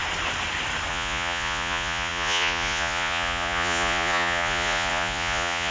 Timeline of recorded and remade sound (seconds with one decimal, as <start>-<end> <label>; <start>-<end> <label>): 0.0-0.9 recorded; 0.9-5.7 remade